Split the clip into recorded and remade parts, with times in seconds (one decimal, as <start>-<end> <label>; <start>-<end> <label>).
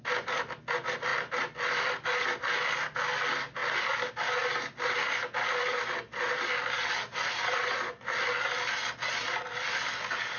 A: 0.0-10.4 recorded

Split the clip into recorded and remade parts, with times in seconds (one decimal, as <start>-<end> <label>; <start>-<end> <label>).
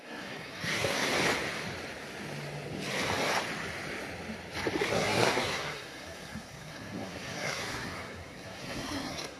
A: 0.0-1.1 remade; 1.1-4.9 recorded; 4.9-9.4 remade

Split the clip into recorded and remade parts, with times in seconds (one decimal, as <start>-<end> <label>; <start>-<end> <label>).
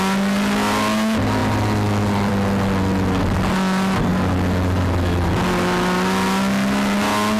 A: 0.0-7.4 recorded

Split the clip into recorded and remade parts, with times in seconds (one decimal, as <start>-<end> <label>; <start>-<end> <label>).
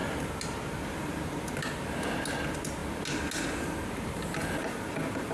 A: 0.0-5.3 recorded